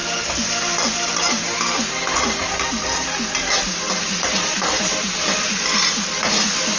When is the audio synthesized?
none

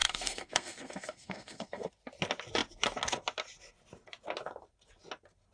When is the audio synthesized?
0.0-1.9 (codec, SNAC)

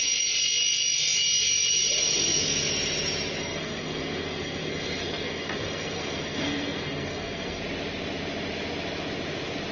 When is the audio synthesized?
3.4-7.6 (codec, SNAC)

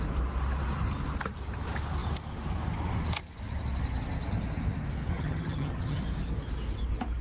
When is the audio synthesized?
5.1-6.0 (vocoder, HiFi-GAN)

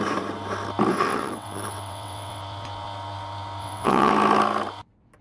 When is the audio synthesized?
0.9-2.4 (vocoder, WaveNeXt); 3.6-4.1

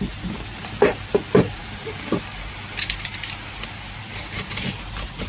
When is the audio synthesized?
none

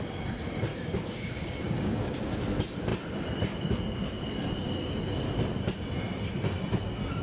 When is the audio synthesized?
0.7-2.3 (codec, DAC)

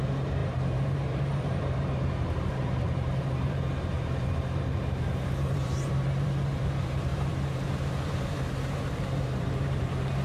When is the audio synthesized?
0.0-10.2 (vocoder, BigVGAN v2)